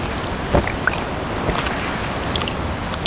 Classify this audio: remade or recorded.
recorded